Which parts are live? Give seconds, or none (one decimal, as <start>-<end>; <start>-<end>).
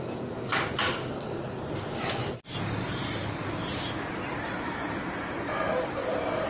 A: 0.0-6.5